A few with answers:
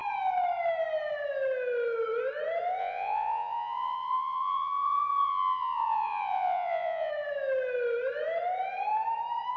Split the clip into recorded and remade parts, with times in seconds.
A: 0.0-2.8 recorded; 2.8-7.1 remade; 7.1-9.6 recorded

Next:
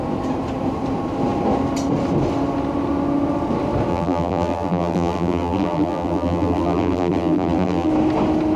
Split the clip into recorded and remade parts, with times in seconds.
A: 0.0-3.9 recorded; 3.9-7.9 remade; 7.9-8.6 recorded

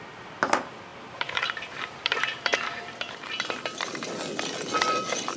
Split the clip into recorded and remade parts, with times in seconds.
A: 0.0-0.9 recorded; 0.9-4.1 remade; 4.1-5.4 recorded

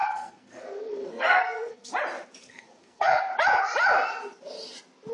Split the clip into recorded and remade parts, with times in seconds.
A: 0.0-1.9 remade; 1.9-2.4 recorded; 2.4-3.3 remade; 3.3-5.1 recorded

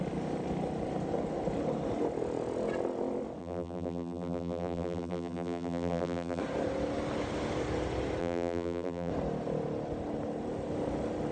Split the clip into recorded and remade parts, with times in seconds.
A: 0.0-3.4 recorded; 3.4-6.4 remade; 6.4-8.2 recorded; 8.2-9.1 remade; 9.1-11.3 recorded

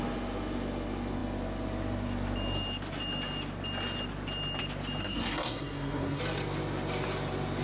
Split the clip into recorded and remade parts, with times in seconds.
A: 0.0-5.0 recorded; 5.0-6.2 remade; 6.2-7.6 recorded